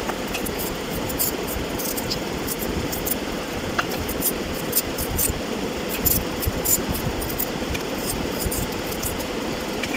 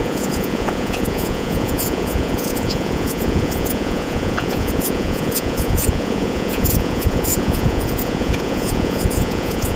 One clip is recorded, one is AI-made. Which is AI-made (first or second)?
second